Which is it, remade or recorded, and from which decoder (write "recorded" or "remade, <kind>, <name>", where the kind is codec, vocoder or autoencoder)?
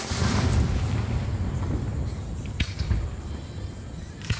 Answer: recorded